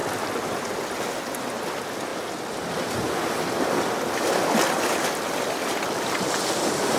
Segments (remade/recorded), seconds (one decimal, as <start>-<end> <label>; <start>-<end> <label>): 0.0-7.0 recorded